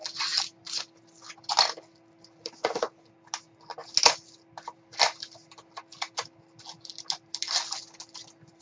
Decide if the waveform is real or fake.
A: real